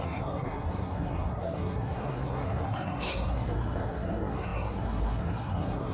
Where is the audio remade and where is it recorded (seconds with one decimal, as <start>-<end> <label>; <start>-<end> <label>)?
0.0-5.9 remade